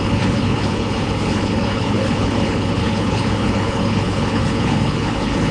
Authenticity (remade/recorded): remade